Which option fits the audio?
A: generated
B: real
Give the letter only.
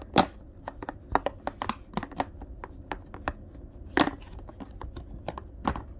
B